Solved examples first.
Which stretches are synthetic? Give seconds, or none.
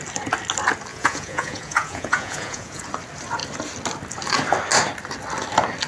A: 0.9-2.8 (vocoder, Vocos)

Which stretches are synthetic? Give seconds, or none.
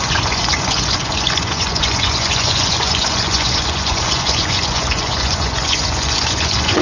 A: 0.0-6.8 (vocoder, Vocos)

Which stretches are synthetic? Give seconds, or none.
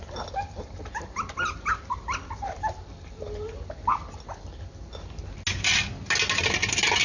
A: none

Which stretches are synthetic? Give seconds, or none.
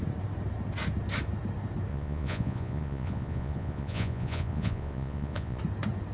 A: 1.9-5.6 (vocoder, Vocos)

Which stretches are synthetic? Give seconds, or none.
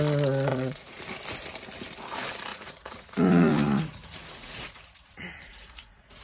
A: 0.5-1.0 (vocoder, Vocos); 2.5-6.2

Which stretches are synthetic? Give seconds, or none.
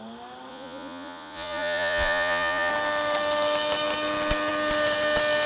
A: 0.5-2.7 (vocoder, Vocos)